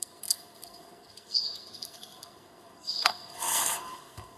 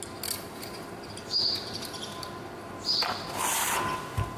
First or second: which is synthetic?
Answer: first